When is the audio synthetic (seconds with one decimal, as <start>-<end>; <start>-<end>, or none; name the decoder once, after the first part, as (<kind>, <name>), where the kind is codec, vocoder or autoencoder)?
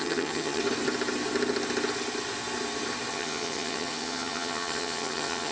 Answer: 0.0-0.6 (vocoder, HiFi-GAN); 3.1-5.5